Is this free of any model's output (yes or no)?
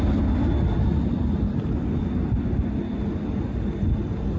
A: yes